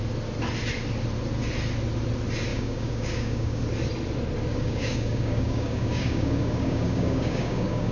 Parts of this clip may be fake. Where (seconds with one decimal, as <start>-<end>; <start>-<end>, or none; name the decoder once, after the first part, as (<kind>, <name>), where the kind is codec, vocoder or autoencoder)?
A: 2.5-3.6 (codec, DAC); 4.5-7.9